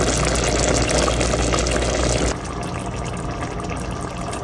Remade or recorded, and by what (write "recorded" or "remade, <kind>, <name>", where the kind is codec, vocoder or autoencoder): recorded